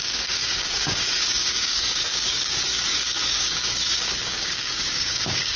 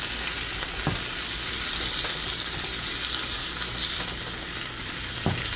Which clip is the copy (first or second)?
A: first